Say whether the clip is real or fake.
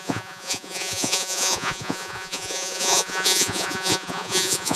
fake